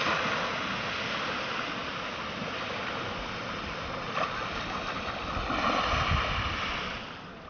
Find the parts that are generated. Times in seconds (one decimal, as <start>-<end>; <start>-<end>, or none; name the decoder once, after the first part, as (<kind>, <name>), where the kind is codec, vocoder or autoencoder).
none